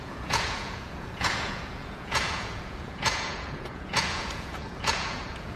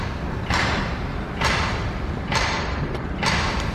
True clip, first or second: second